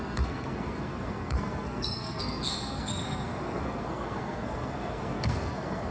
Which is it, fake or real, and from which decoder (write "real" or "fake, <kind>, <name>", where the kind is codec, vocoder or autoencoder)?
fake, codec, SNAC